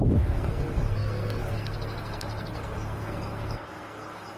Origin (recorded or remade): remade